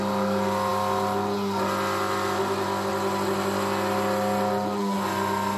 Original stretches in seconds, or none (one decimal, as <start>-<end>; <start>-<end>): 0.0-5.6